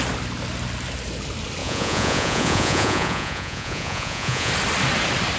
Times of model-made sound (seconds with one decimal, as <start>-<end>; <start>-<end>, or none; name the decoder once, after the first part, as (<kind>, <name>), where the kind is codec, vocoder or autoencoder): 1.6-4.5 (vocoder, Vocos)